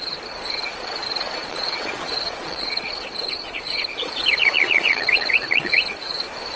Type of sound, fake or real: fake